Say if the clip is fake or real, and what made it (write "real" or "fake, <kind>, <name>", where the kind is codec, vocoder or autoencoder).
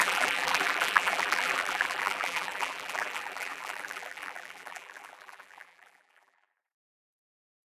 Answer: fake, vocoder, BigVGAN v2